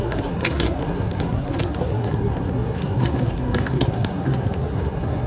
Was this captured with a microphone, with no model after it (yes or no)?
no